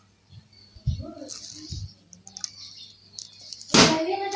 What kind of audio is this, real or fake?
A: real